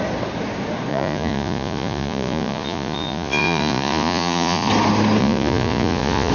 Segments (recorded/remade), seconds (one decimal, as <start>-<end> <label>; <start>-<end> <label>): 0.0-0.9 recorded; 0.9-4.7 remade; 4.7-5.2 recorded; 5.2-6.3 remade